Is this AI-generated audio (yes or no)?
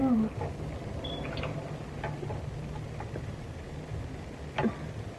no